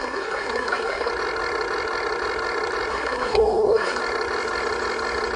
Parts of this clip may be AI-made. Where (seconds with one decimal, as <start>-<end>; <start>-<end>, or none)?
0.0-1.1; 2.9-4.0